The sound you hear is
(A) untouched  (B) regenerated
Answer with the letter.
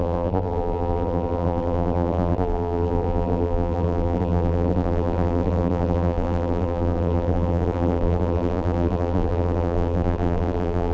B